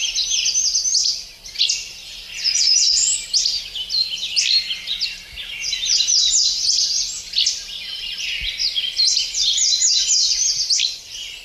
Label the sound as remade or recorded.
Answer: recorded